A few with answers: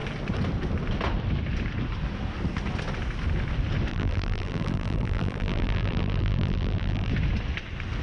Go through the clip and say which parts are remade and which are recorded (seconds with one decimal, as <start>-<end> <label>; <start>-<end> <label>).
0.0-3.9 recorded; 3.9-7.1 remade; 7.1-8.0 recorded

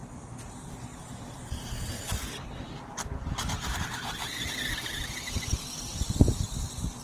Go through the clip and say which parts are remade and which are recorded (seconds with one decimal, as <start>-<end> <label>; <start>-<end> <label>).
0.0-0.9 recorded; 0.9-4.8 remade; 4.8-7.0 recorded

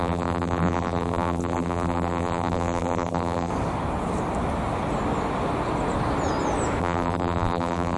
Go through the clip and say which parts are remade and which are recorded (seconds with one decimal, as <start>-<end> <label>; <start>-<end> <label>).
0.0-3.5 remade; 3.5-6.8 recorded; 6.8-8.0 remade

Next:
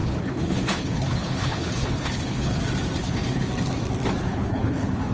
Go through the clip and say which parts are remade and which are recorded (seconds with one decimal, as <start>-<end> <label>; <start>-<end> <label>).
0.0-2.6 remade; 2.6-3.0 recorded; 3.0-3.5 remade; 3.5-4.2 recorded; 4.2-5.1 remade